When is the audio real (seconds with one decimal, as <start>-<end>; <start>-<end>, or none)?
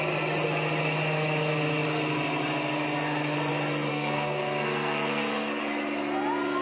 0.0-3.9; 5.6-6.6